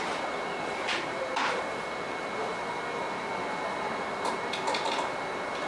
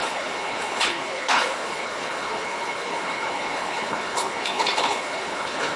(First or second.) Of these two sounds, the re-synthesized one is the second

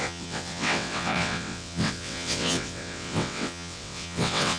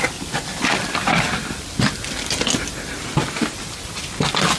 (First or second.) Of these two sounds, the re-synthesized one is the first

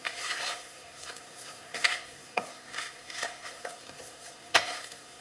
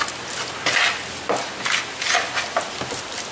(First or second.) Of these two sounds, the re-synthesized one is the first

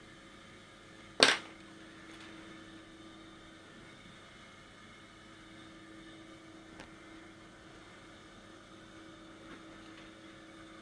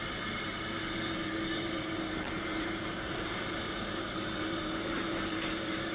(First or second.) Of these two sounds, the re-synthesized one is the second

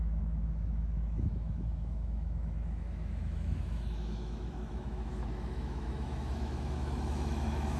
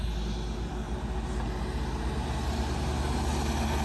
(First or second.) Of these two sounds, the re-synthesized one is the first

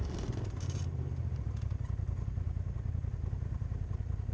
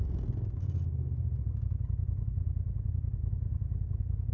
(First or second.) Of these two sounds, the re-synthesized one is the first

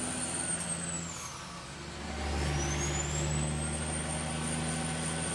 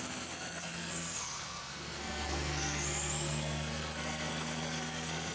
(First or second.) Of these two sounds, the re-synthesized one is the second